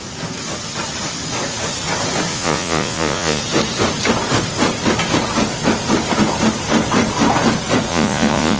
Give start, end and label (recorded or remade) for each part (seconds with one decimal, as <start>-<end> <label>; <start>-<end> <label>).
0.0-2.3 recorded; 2.3-3.4 remade; 3.4-7.9 recorded; 7.9-8.6 remade